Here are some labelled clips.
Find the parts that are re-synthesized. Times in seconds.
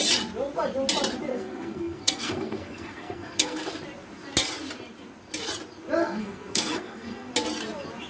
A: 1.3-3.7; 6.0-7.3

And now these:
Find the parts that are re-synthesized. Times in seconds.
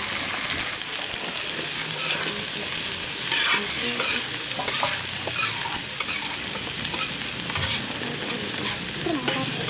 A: none